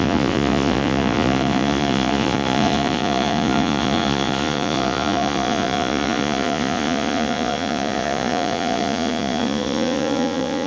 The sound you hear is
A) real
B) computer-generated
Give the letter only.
B